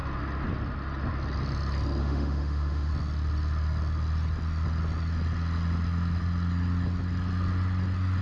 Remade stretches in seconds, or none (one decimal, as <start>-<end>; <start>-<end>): 2.0-2.9